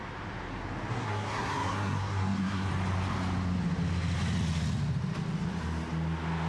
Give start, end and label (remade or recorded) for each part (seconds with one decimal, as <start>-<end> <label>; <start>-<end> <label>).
0.0-0.9 recorded; 0.9-2.7 remade; 2.7-6.5 recorded